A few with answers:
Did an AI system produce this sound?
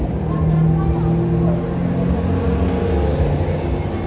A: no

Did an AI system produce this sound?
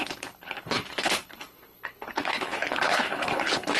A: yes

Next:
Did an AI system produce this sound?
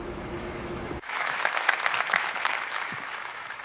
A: yes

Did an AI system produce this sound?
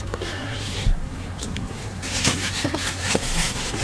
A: yes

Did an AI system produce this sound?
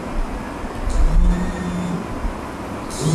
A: no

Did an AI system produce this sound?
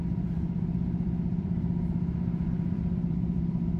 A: yes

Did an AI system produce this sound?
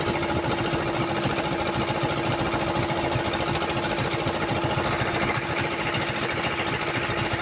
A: no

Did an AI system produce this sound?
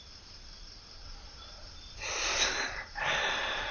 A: yes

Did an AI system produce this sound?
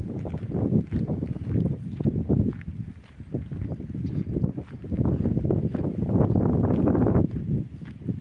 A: no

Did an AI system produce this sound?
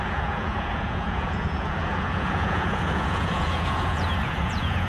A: yes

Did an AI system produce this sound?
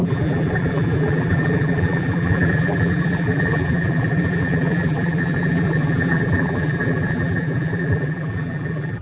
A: yes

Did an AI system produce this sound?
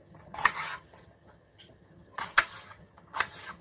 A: yes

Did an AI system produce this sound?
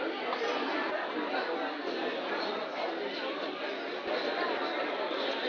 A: no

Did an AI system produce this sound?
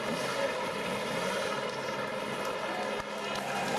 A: no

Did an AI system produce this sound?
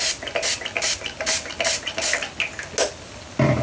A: no